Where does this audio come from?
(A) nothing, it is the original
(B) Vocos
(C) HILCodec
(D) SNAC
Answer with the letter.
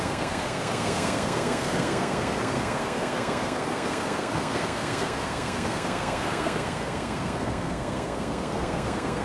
D